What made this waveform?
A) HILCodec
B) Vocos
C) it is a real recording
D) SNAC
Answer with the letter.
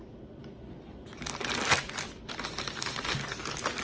C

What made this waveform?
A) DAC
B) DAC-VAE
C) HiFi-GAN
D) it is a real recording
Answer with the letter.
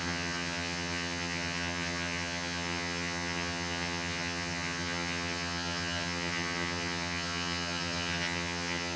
C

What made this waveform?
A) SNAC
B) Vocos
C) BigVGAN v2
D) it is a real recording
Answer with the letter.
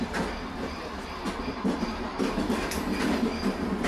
D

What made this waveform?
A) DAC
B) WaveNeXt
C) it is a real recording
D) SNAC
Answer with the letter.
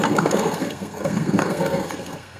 D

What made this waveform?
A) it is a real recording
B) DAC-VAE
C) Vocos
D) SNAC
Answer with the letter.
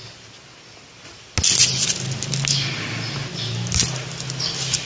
A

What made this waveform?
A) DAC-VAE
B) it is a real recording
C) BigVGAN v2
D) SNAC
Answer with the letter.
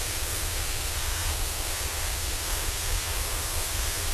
D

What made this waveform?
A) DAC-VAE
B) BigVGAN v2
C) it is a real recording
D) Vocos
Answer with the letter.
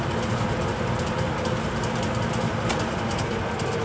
C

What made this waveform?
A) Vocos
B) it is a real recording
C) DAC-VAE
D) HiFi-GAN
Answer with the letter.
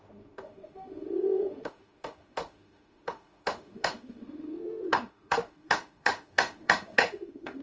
C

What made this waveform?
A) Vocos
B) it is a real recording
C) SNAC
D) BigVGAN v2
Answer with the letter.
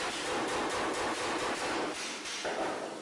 B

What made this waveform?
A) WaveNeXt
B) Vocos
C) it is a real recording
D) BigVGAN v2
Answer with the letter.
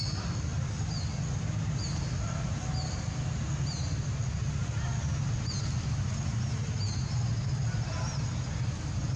C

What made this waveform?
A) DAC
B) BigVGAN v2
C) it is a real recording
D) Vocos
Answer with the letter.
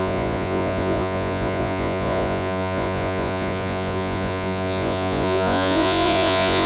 D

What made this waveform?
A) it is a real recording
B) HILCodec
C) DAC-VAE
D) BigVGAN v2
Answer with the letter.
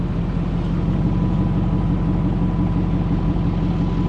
A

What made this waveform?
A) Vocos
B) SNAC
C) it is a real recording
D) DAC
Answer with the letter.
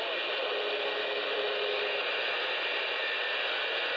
C